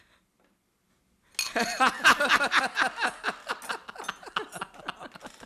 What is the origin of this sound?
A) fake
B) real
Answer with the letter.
B